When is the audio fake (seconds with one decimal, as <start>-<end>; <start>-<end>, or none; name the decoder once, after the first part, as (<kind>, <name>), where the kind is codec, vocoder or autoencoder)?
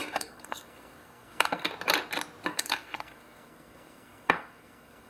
0.0-1.7 (codec, SNAC); 2.5-5.1